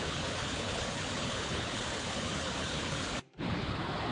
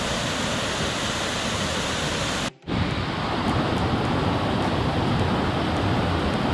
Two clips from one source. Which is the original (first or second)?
second